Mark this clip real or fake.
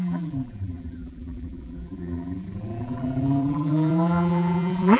fake